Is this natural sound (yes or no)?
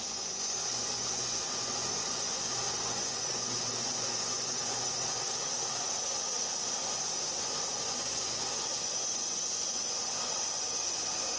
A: no